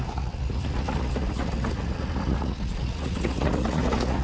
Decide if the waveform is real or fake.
fake